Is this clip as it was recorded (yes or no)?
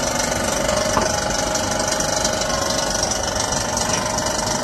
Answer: yes